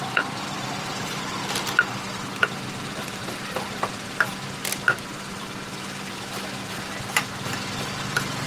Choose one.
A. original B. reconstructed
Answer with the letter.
A